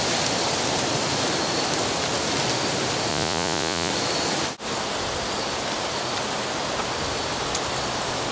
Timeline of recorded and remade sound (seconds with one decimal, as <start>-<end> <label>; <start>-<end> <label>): 0.0-3.1 recorded; 3.1-3.9 remade; 3.9-8.3 recorded

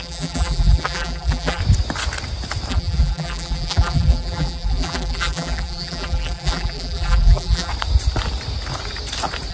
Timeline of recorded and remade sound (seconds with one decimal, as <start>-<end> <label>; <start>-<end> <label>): 0.0-1.6 remade; 1.6-2.7 recorded; 2.7-7.7 remade; 7.7-9.5 recorded

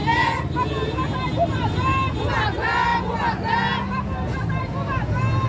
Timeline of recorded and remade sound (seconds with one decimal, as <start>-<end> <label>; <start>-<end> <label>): 0.0-5.5 recorded

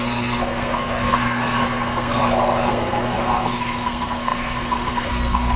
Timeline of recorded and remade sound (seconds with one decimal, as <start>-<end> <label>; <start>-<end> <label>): 0.0-2.2 remade; 2.2-2.7 recorded; 2.7-5.6 remade

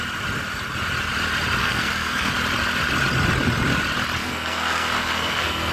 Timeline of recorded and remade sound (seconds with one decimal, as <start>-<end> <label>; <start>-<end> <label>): 0.0-1.6 recorded; 1.6-2.3 remade; 2.3-4.2 recorded; 4.2-5.7 remade